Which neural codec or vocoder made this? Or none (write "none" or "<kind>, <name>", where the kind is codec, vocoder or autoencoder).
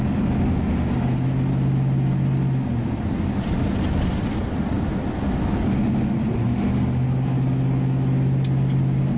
none